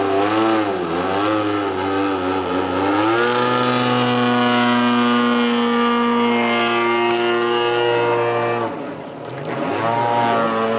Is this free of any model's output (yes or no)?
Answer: yes